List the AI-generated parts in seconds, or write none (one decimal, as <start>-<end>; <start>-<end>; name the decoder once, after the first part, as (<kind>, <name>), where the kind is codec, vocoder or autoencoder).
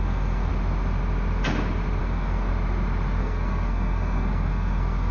0.0-0.5 (codec, SNAC); 2.0-2.5; 3.2-5.1